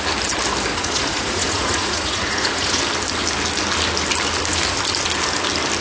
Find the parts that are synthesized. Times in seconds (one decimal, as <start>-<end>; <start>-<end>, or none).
0.7-2.8